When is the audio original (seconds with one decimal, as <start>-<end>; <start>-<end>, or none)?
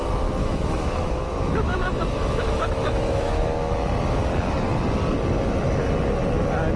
0.0-0.4; 3.9-6.8